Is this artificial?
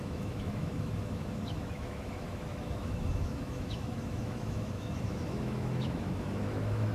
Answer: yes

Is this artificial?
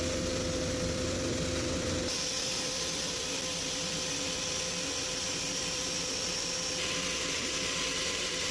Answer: no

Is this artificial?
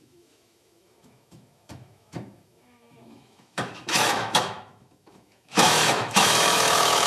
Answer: yes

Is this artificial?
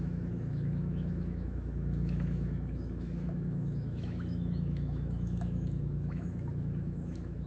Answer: yes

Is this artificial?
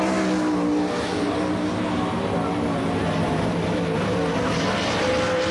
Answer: no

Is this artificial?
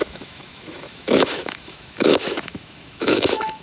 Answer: yes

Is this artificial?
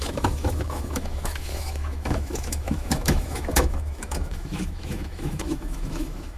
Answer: yes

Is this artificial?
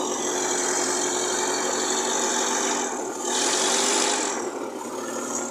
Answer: no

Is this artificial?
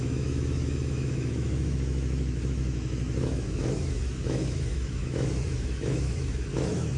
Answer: yes